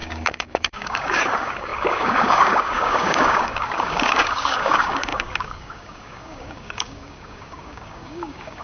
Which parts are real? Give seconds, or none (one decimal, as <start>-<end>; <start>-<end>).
none